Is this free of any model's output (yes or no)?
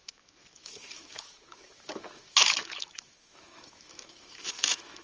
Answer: no